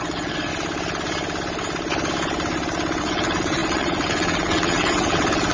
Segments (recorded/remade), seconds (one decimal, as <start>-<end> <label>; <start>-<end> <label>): 0.0-0.5 remade; 0.5-3.0 recorded; 3.0-5.5 remade